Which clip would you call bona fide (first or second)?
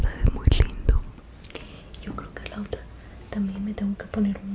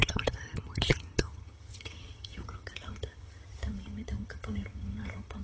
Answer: first